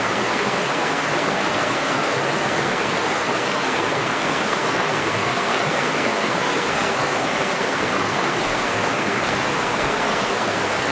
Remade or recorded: remade